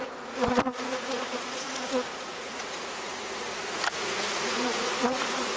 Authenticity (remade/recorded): remade